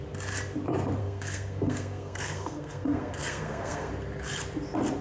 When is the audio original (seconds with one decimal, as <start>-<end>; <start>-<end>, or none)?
0.0-1.0; 3.9-5.0